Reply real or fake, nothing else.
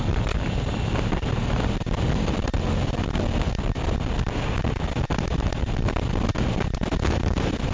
real